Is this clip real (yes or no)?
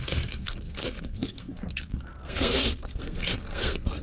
no